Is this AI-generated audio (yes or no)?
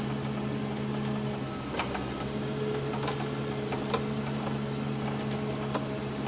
no